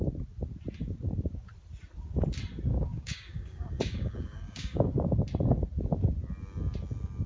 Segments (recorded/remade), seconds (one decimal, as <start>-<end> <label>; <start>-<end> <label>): 0.0-2.7 recorded; 2.7-4.9 remade; 4.9-7.3 recorded